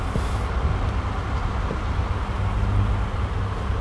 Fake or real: real